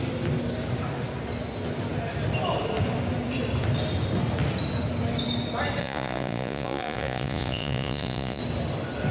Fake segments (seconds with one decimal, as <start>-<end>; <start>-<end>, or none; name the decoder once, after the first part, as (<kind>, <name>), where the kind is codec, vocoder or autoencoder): 5.8-8.4 (vocoder, Vocos)

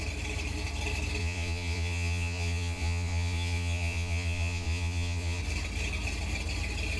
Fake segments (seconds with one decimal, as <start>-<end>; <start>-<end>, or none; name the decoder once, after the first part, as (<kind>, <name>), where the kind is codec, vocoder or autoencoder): 1.2-5.4 (vocoder, Vocos)

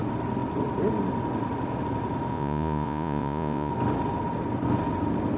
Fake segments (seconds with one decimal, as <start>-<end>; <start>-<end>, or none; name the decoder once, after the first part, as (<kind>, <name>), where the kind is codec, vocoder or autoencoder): 2.3-3.7 (vocoder, Vocos)

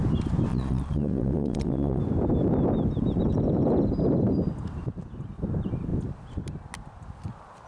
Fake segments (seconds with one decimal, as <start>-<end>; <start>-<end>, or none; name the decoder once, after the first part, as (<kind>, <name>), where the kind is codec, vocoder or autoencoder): 0.5-2.0 (vocoder, Vocos)